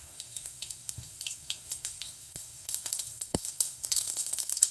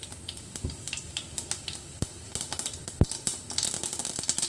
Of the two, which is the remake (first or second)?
first